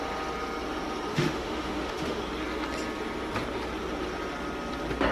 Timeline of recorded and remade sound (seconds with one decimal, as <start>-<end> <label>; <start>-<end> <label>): 0.0-1.1 recorded; 1.1-2.2 remade; 2.2-5.1 recorded